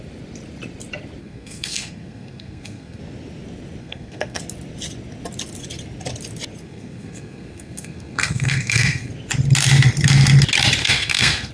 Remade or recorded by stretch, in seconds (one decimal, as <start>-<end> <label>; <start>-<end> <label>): 0.0-1.2 recorded; 1.2-3.0 remade; 3.0-3.8 recorded; 3.8-4.4 remade; 4.4-6.6 recorded; 6.6-9.1 remade; 9.1-10.8 recorded; 10.8-11.5 remade